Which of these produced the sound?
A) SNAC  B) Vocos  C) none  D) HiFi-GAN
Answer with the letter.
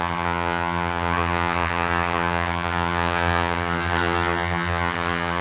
D